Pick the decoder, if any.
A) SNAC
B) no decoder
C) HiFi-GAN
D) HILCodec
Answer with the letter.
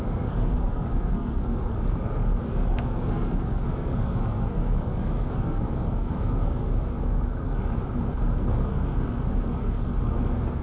A